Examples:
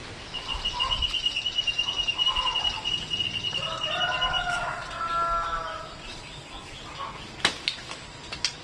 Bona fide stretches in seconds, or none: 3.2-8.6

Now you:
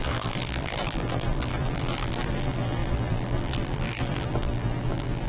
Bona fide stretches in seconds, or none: none

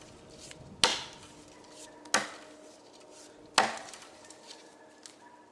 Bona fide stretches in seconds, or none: 0.0-3.8; 4.8-5.5